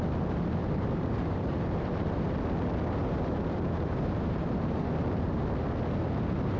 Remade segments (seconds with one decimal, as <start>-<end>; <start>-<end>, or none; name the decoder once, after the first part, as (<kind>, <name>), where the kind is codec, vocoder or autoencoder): 0.6-2.4 (vocoder, BigVGAN v2); 3.0-5.4

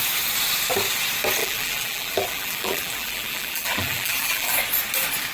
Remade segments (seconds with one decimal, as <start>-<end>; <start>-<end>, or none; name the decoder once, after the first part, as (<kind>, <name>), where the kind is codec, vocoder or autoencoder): 1.4-4.5 (vocoder, BigVGAN v2)